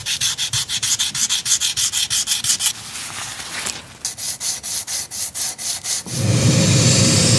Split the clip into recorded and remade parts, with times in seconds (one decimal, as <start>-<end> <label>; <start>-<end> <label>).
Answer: 0.0-1.0 remade; 1.0-7.4 recorded